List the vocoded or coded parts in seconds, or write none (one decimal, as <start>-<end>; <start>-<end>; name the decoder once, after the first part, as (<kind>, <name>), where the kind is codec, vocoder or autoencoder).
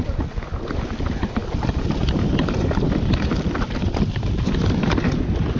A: none